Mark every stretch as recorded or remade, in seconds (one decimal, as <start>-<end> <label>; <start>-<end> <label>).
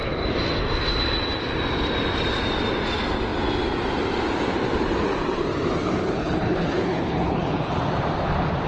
0.0-5.8 recorded; 5.8-7.7 remade; 7.7-8.7 recorded